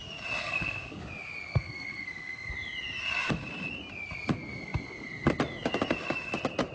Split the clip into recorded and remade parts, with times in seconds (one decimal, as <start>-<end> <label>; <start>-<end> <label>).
0.0-0.4 recorded; 0.4-1.0 remade; 1.0-1.5 recorded; 1.5-2.5 remade; 2.5-6.7 recorded